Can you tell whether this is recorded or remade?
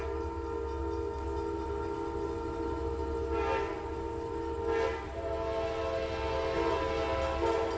recorded